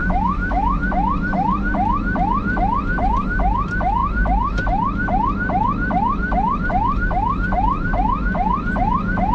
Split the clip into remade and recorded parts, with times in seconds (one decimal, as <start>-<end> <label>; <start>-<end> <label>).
0.0-0.8 remade; 0.8-9.3 recorded